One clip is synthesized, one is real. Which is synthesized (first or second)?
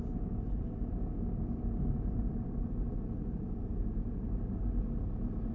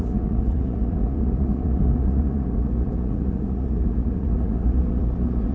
second